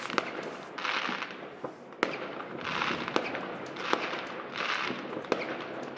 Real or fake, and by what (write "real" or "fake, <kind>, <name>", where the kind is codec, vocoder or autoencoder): real